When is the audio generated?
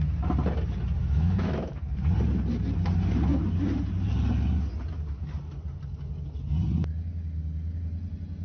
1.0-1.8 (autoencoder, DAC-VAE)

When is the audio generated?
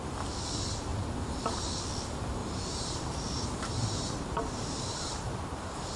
2.4-6.0 (vocoder, BigVGAN v2)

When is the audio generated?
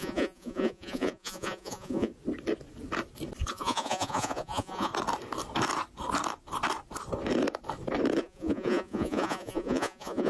0.0-2.1 (vocoder, Vocos); 3.5-4.9; 8.2-10.3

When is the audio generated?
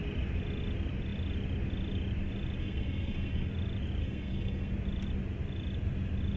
2.6-3.5 (codec, SNAC); 4.0-4.7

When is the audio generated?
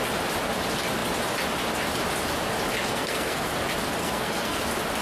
2.9-3.5 (codec, SNAC); 4.0-4.6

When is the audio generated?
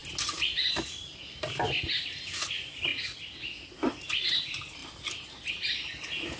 none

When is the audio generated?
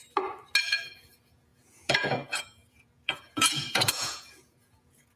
0.6-5.2 (vocoder, Vocos)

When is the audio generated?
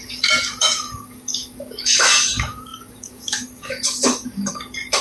0.0-5.0 (codec, DAC)